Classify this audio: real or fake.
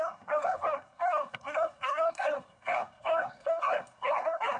fake